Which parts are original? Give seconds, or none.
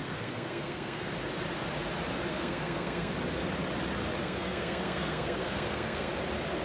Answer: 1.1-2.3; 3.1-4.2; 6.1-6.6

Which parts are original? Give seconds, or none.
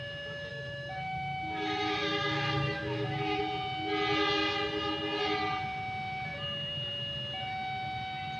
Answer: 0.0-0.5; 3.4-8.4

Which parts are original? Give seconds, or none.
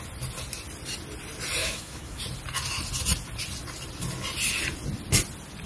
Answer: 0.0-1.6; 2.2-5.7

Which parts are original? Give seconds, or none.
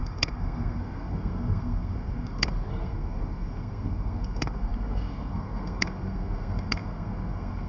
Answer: none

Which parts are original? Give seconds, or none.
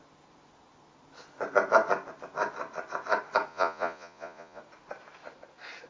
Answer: 0.0-3.5; 4.6-5.9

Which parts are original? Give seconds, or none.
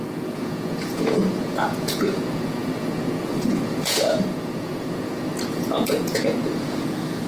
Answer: none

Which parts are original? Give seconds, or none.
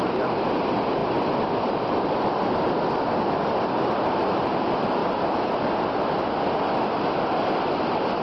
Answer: 0.0-8.2